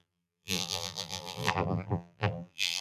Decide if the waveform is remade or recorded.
remade